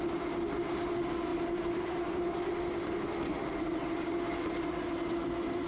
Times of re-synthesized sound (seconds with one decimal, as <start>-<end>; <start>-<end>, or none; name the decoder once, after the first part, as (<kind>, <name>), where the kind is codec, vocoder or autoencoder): 1.3-3.5 (vocoder, BigVGAN v2)